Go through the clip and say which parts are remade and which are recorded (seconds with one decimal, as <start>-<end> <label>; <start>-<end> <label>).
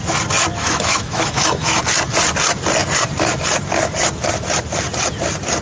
0.0-0.6 recorded; 0.6-1.8 remade; 1.8-5.6 recorded